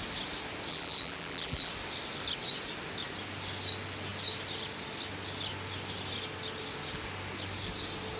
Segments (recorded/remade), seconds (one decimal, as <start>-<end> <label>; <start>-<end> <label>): 0.0-0.7 recorded; 0.7-1.7 remade; 1.7-8.2 recorded

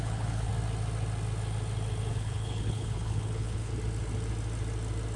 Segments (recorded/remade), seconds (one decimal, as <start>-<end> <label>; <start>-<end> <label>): 0.0-0.5 remade; 0.5-2.1 recorded; 2.1-3.7 remade; 3.7-5.2 recorded